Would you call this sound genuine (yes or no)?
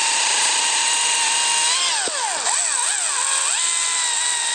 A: yes